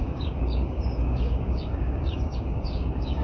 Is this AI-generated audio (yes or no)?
yes